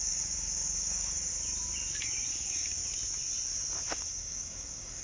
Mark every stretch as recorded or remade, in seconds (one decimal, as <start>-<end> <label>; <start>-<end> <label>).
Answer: 0.0-1.3 remade; 1.3-2.3 recorded; 2.3-2.8 remade; 2.8-3.9 recorded; 3.9-5.0 remade